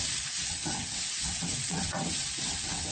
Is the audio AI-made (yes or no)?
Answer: yes